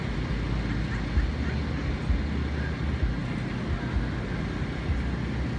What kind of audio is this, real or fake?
real